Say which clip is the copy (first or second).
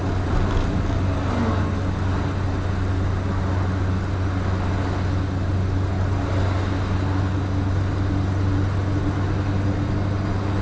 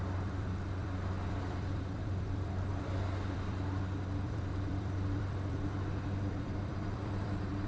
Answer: second